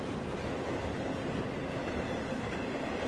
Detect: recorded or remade recorded